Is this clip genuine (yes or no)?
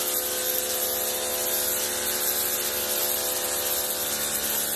yes